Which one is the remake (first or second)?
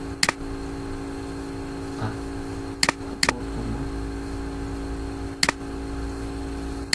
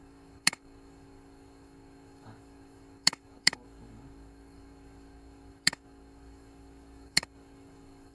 second